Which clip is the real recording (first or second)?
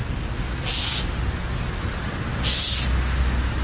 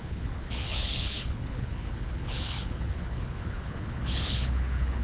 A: first